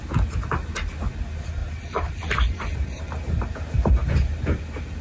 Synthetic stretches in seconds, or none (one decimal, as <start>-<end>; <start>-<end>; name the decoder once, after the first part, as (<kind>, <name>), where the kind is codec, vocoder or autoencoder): 1.6-3.0 (vocoder, BigVGAN v2)